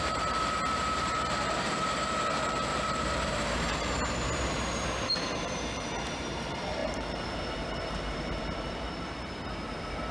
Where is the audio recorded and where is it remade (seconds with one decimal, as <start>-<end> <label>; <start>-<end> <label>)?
0.0-10.1 remade